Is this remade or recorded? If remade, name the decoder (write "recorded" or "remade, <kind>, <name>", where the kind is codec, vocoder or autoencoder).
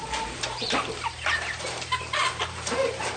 remade, vocoder, BigVGAN v2